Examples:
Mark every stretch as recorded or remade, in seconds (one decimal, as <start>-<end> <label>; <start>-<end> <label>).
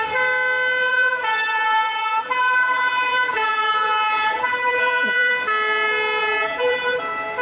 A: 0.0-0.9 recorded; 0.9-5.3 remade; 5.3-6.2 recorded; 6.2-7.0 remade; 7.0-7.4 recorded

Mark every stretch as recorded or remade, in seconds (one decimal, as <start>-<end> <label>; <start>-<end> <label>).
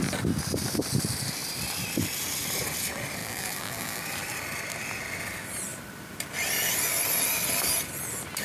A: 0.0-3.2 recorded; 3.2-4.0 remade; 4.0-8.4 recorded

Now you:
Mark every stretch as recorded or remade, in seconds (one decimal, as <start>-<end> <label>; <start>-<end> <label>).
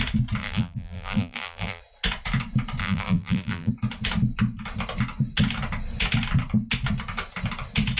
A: 0.0-0.4 recorded; 0.4-1.8 remade; 1.8-2.8 recorded; 2.8-3.7 remade; 3.7-8.0 recorded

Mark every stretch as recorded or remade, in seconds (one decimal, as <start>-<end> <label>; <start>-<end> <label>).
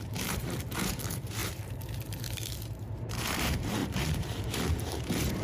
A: 0.0-5.4 remade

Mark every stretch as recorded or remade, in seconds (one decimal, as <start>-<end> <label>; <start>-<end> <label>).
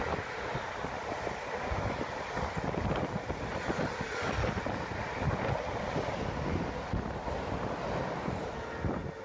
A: 0.0-9.2 recorded